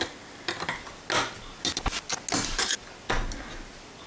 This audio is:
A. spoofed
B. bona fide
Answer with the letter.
B